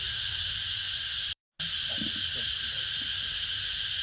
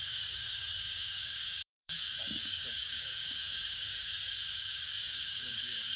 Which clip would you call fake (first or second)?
second